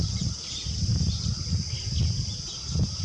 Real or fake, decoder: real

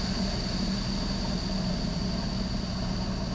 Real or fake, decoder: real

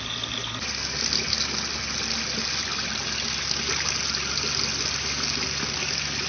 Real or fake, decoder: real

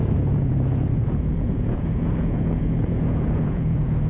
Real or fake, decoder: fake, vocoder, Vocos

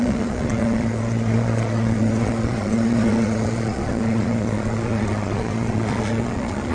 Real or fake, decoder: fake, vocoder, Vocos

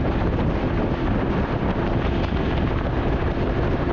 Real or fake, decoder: real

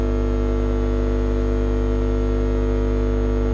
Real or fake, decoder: real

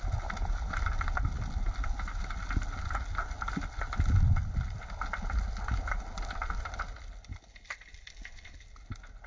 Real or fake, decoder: real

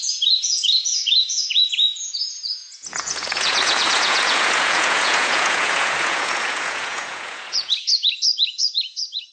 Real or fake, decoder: fake, vocoder, Vocos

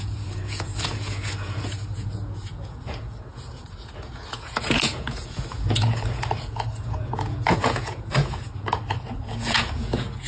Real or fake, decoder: fake, vocoder, Vocos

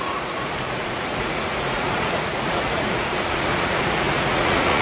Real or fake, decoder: fake, vocoder, Vocos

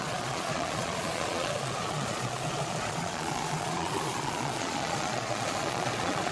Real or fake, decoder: fake, vocoder, Vocos